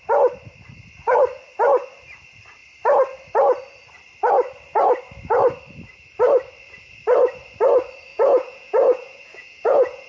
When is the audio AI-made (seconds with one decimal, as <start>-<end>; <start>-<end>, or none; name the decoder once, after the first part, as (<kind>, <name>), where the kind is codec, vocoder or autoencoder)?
8.1-10.1 (vocoder, Vocos)